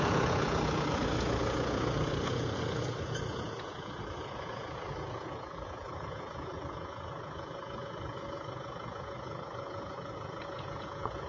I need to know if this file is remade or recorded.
remade